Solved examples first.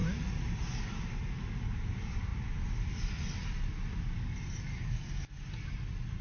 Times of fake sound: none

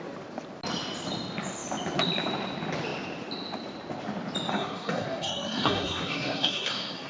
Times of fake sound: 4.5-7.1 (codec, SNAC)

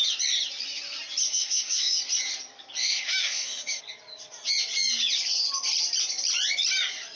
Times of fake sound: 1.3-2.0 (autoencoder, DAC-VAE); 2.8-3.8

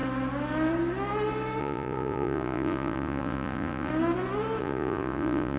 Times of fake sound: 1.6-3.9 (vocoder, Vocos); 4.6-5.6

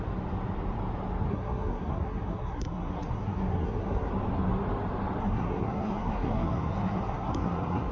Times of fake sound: 1.3-4.1 (codec, SNAC); 5.2-7.9